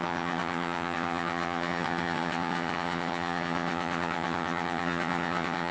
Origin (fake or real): fake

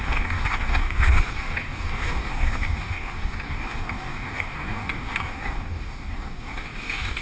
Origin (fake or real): fake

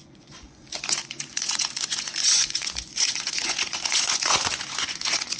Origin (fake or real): fake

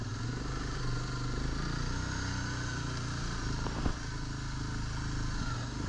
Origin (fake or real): real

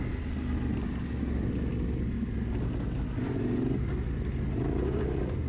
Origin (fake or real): real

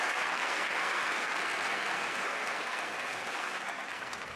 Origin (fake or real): fake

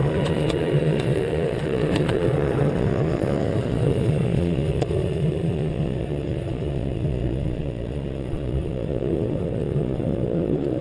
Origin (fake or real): fake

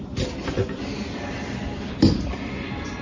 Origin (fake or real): real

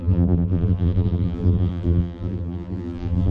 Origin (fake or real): fake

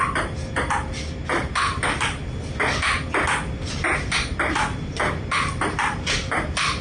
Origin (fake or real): real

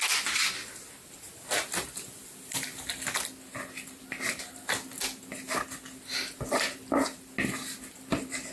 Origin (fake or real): real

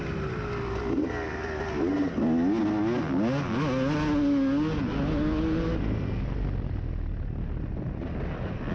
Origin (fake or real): real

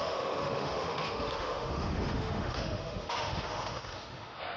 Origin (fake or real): fake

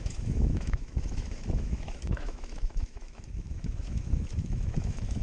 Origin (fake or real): fake